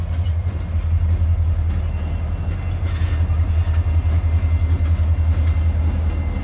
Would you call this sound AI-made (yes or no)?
no